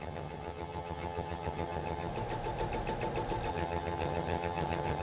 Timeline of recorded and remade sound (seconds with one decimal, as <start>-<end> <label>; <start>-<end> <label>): 0.0-2.1 remade; 2.1-3.5 recorded; 3.5-5.0 remade